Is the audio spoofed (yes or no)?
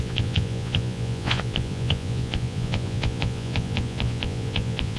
yes